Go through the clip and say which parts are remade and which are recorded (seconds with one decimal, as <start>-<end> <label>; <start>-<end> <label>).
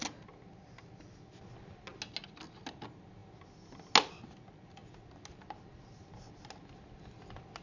0.0-7.6 recorded